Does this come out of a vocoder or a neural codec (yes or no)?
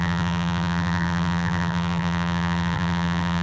yes